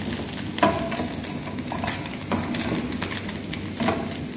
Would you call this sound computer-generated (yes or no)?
no